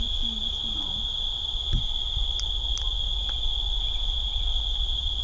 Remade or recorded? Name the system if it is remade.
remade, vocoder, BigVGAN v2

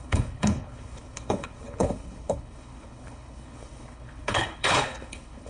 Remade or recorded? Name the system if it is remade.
remade, codec, HILCodec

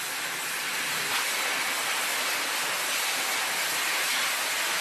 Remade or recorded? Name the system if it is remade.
recorded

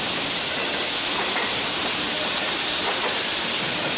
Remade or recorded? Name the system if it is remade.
remade, vocoder, BigVGAN v2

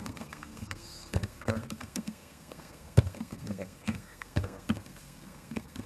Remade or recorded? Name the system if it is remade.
remade, codec, SNAC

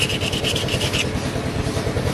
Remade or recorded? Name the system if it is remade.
recorded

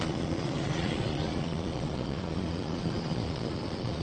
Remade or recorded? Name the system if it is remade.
remade, vocoder, Vocos